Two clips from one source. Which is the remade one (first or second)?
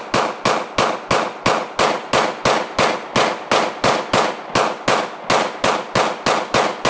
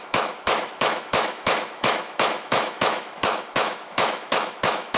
second